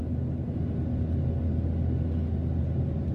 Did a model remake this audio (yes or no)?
no